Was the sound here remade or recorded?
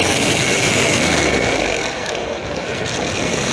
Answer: remade